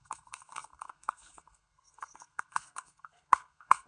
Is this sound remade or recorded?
remade